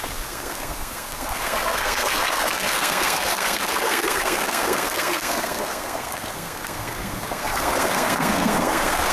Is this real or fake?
fake